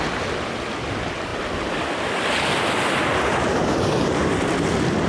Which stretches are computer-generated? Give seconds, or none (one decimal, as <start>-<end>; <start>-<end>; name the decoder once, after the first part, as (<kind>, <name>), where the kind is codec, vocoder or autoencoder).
none